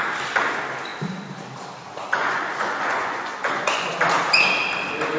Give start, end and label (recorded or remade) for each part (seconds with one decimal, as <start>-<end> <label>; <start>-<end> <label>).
0.0-2.2 recorded; 2.2-3.9 remade; 3.9-5.2 recorded